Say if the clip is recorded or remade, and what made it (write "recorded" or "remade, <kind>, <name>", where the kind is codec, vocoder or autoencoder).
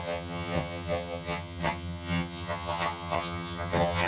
remade, vocoder, HiFi-GAN